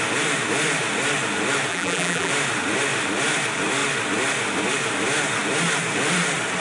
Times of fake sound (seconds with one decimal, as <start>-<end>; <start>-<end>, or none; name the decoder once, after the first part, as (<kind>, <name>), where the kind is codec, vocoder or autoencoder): 1.7-2.3 (vocoder, BigVGAN v2)